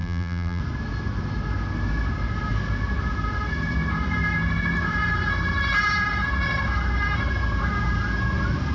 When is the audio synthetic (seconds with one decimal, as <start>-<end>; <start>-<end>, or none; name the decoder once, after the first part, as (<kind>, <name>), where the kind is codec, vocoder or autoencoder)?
0.0-0.6 (vocoder, BigVGAN v2)